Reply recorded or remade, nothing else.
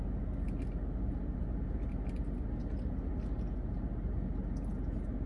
recorded